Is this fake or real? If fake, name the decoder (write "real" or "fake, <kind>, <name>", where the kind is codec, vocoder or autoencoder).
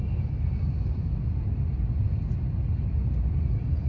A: real